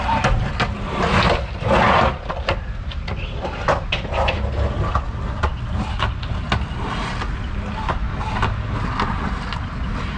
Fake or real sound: real